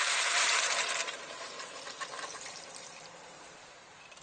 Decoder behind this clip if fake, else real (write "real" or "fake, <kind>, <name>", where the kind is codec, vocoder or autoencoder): fake, vocoder, BigVGAN v2